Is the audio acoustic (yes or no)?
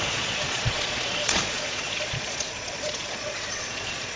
no